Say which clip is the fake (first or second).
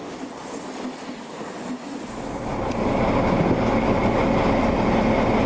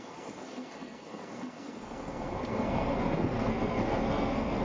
second